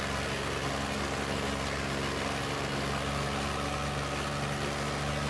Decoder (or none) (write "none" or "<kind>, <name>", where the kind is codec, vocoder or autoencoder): none